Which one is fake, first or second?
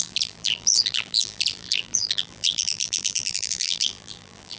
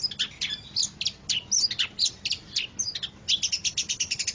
first